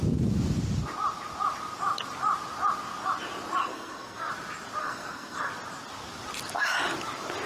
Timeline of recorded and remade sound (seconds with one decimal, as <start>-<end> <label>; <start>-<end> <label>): 0.0-3.6 recorded; 3.6-4.3 remade; 4.3-4.8 recorded; 4.8-5.5 remade; 5.5-7.5 recorded